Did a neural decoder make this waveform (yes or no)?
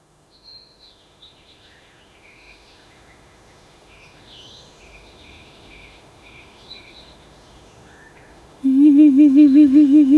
yes